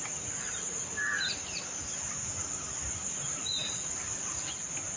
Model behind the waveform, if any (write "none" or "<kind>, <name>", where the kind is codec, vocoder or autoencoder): none